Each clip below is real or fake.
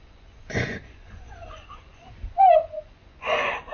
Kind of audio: fake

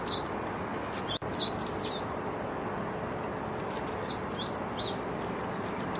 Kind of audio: real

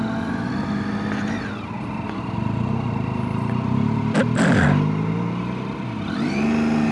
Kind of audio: real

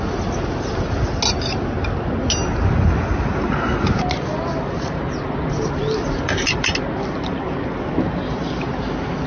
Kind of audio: real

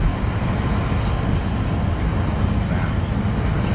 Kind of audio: real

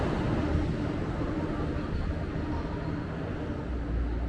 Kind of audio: real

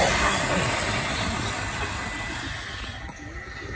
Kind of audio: real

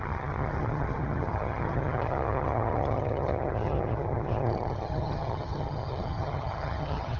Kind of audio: fake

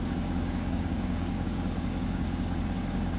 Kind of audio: fake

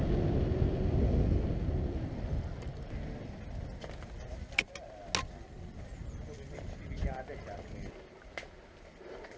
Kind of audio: real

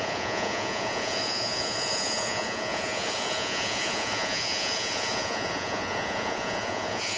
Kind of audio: fake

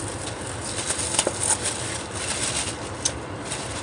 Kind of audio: real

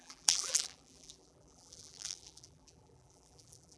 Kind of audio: fake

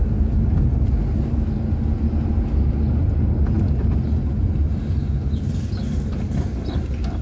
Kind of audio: real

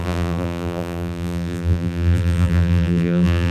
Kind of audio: fake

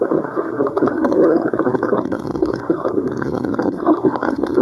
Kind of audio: fake